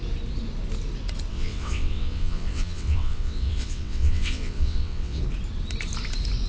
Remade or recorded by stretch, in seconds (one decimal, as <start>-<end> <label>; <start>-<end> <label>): 0.0-1.3 recorded; 1.3-5.2 remade; 5.2-6.5 recorded